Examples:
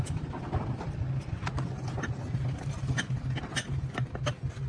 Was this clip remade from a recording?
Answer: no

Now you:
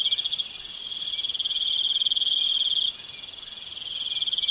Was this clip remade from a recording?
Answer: no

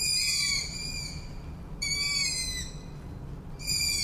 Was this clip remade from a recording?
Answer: no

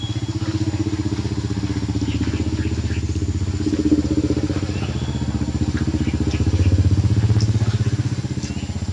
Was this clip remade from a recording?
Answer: no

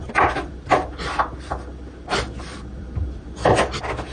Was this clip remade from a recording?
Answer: no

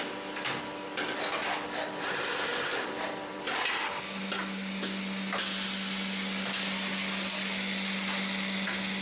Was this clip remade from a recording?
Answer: no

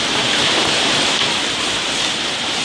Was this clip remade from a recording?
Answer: no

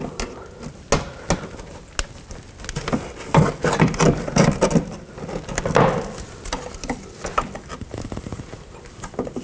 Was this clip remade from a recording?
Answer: no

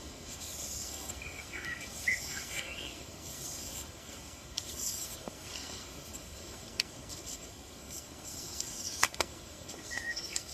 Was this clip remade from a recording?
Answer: yes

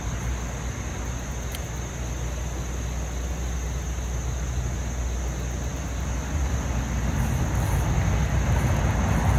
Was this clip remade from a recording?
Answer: no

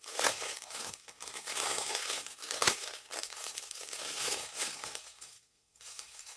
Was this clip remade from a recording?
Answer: yes